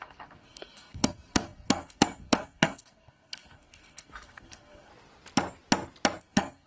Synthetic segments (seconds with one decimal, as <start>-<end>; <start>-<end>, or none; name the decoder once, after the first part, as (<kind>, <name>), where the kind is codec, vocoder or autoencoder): 0.0-4.9 (codec, SNAC); 6.2-6.7